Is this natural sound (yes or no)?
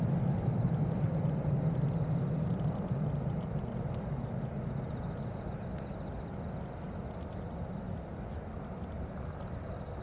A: yes